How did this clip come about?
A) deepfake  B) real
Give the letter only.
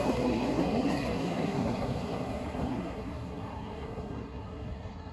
A